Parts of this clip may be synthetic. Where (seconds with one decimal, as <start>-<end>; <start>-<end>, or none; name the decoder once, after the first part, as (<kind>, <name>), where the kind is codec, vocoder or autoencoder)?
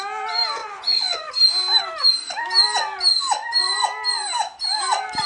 0.6-1.3 (vocoder, Vocos)